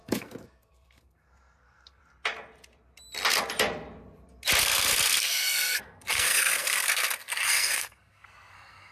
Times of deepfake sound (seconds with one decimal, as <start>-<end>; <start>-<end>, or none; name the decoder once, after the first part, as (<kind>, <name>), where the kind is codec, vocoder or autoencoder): 0.0-2.0 (codec, SNAC); 4.6-8.9